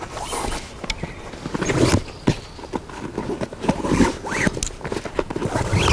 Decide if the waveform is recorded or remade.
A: recorded